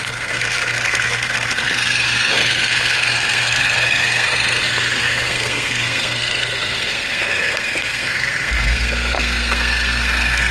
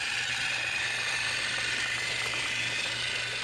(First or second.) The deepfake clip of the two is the first